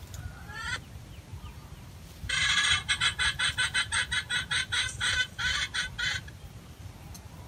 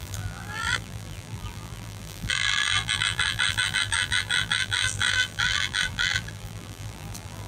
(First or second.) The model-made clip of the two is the second